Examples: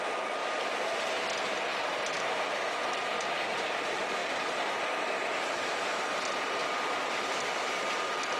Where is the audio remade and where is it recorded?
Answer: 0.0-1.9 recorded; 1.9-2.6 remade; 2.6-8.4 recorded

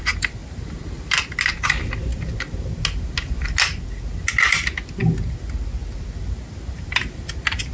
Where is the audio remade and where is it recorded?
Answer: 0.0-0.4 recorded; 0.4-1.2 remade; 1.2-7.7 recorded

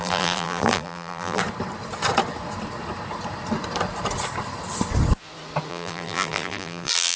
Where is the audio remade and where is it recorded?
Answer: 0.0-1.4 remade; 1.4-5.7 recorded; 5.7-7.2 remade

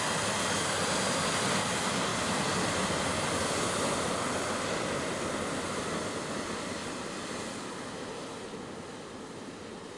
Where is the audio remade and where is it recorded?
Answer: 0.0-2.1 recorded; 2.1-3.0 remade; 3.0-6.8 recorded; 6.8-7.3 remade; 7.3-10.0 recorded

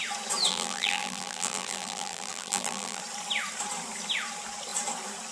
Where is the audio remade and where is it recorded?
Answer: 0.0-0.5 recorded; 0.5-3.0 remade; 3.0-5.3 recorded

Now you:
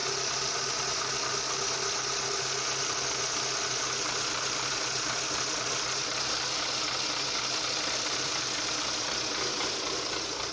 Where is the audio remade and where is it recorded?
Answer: 0.0-10.5 recorded